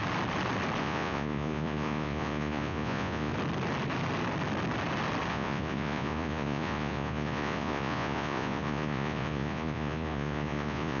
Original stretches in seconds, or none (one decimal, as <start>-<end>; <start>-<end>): 0.0-0.8; 3.3-5.3